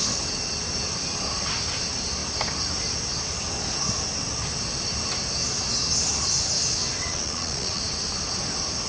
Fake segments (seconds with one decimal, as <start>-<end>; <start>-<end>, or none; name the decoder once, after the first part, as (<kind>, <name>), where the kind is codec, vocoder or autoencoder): 7.0-7.8 (vocoder, Vocos)